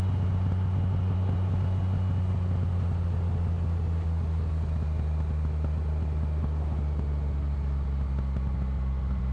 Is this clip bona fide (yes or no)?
yes